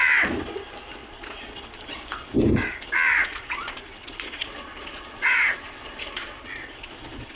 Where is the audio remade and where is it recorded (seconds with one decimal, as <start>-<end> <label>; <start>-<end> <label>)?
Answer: 0.0-1.0 recorded; 1.0-2.0 remade; 2.0-3.2 recorded; 3.2-7.4 remade

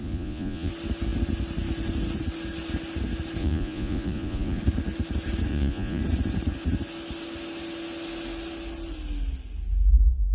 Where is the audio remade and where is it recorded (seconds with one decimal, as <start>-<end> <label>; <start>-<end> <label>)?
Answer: 0.0-0.7 remade; 0.7-3.4 recorded; 3.4-4.6 remade; 4.6-5.5 recorded; 5.5-6.0 remade; 6.0-10.3 recorded

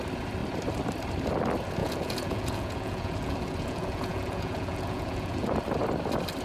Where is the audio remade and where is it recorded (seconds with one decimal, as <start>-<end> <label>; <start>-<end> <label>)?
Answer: 0.0-1.8 recorded; 1.8-5.6 remade; 5.6-6.4 recorded

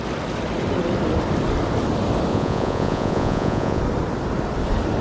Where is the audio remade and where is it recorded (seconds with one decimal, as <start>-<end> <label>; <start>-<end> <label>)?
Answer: 0.0-2.3 recorded; 2.3-3.8 remade; 3.8-5.0 recorded

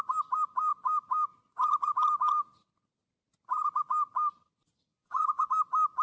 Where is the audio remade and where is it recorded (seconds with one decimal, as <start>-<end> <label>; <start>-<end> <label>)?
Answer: 0.0-4.9 recorded; 4.9-5.5 remade; 5.5-6.0 recorded

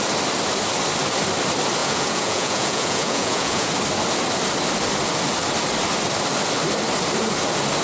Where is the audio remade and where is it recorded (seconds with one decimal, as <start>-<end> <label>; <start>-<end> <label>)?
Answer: 0.0-1.8 recorded; 1.8-3.7 remade; 3.7-7.8 recorded